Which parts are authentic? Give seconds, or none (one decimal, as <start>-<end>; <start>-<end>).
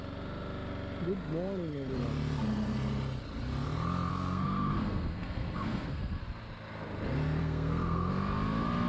0.0-4.1; 6.2-7.4; 8.1-8.9